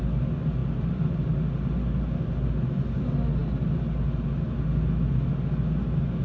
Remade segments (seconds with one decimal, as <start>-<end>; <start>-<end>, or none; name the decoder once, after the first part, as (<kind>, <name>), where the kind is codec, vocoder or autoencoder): none